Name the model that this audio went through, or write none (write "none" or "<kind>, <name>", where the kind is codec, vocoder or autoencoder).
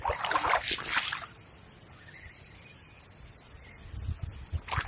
none